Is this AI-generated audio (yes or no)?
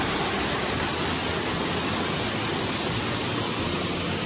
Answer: no